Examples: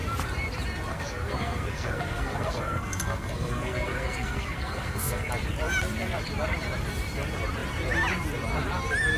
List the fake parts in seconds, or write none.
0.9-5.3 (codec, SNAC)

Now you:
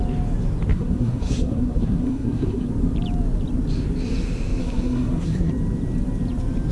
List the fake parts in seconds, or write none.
0.7-2.7 (codec, SNAC); 4.6-5.5

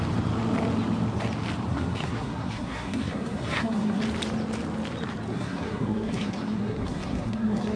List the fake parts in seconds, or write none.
1.7-4.0 (codec, SNAC); 5.3-7.8